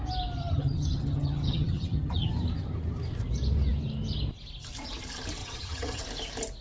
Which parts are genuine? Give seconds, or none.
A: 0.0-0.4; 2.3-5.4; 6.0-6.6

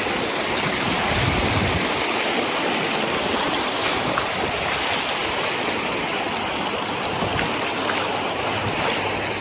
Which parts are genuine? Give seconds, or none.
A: 0.0-9.4

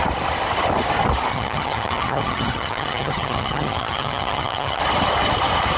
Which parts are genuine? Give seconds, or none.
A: 0.0-1.3; 4.8-5.8

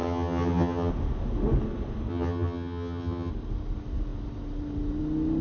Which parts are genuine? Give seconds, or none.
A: 0.9-2.1; 3.3-5.4

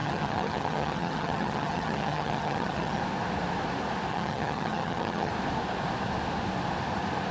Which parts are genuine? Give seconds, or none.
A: 3.0-4.1; 5.3-7.3

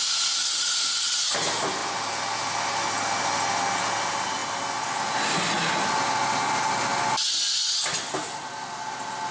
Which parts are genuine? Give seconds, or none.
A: 0.0-9.3